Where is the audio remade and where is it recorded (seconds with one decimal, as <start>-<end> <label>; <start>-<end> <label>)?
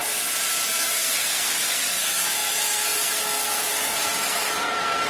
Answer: 0.0-0.7 recorded; 0.7-5.1 remade